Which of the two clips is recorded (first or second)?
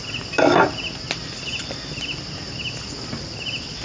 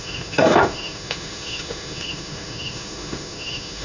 first